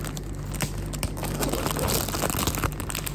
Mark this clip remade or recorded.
recorded